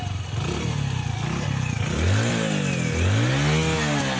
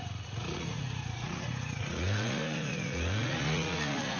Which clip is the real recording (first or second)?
first